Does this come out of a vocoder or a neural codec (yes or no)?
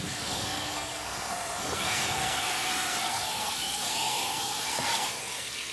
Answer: yes